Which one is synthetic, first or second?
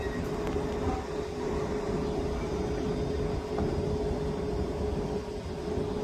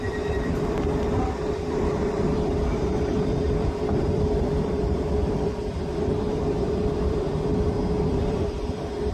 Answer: second